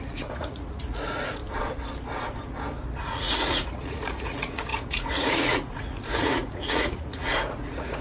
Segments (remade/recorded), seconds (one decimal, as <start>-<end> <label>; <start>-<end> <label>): 0.0-1.4 remade; 1.4-3.0 recorded; 3.0-8.0 remade